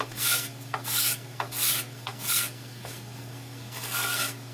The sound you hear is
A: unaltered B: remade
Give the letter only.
B